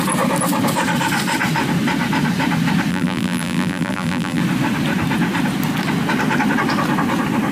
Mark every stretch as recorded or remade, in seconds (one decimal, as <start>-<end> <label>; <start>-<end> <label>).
0.0-2.9 recorded; 2.9-4.4 remade; 4.4-7.5 recorded